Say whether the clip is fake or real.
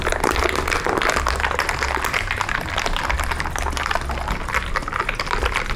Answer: real